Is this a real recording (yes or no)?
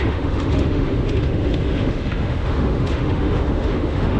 no